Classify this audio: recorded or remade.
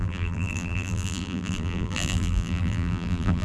remade